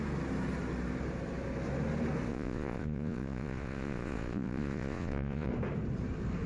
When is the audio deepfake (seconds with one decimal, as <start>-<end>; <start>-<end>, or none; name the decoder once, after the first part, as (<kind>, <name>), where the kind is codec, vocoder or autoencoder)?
2.3-5.5 (vocoder, Vocos)